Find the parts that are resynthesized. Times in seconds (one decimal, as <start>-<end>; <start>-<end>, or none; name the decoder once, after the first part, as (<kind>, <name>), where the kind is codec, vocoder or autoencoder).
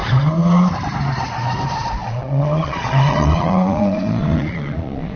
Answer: 2.0-5.2 (vocoder, Vocos)